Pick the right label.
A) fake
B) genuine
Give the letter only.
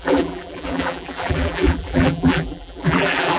A